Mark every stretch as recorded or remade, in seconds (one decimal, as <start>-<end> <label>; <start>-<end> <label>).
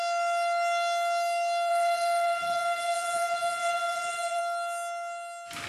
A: 0.0-1.7 recorded; 1.7-4.4 remade; 4.4-5.7 recorded